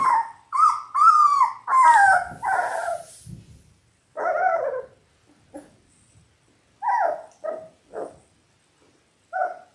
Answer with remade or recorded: recorded